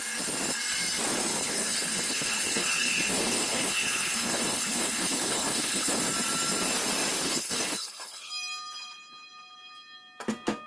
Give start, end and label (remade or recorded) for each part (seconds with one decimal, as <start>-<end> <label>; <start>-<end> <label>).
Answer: 0.0-1.3 recorded; 1.3-6.0 remade; 6.0-7.2 recorded; 7.2-8.3 remade; 8.3-10.7 recorded